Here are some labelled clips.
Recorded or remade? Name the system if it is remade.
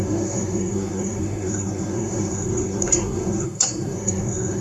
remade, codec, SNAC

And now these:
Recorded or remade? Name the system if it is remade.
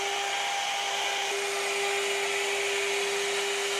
recorded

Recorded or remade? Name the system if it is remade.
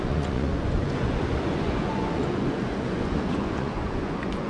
remade, vocoder, Vocos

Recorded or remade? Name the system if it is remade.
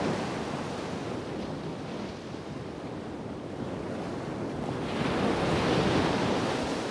recorded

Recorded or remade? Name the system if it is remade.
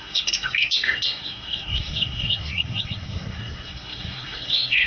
remade, codec, SNAC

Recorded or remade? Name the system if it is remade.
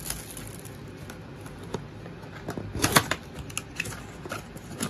recorded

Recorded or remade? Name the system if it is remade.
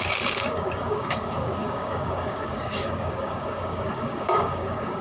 remade, codec, DAC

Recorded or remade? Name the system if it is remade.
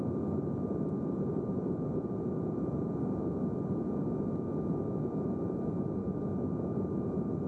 recorded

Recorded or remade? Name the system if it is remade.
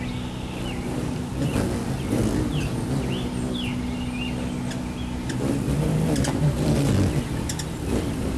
recorded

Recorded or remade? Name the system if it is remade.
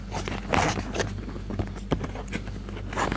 recorded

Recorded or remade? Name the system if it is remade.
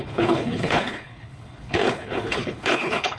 remade, codec, HILCodec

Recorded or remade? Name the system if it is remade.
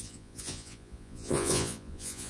remade, vocoder, Vocos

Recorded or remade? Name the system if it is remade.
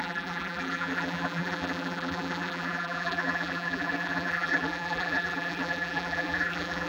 remade, vocoder, BigVGAN v2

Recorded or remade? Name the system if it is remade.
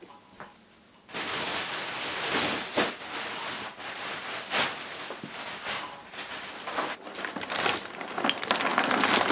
recorded